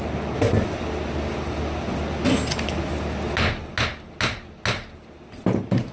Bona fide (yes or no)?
yes